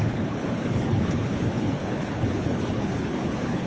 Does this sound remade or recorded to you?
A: remade